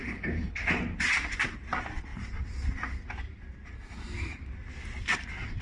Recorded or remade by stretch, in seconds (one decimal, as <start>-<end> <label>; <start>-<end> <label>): 0.0-0.8 remade; 0.8-5.6 recorded